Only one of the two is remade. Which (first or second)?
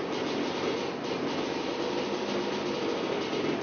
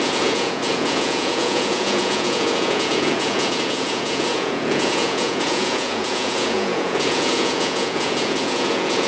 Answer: second